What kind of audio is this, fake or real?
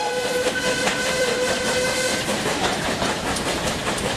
fake